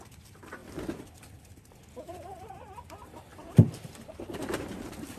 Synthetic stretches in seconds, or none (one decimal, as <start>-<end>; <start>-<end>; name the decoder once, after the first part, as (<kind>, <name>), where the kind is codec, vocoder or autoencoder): 0.0-0.6 (vocoder, BigVGAN v2); 2.0-5.2